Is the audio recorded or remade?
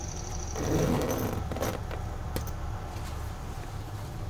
recorded